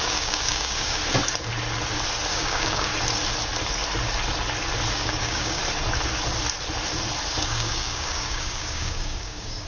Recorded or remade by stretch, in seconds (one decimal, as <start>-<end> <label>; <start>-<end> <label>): 0.0-1.0 remade; 1.0-2.3 recorded; 2.3-2.9 remade; 2.9-4.9 recorded; 4.9-5.6 remade; 5.6-7.4 recorded; 7.4-9.7 remade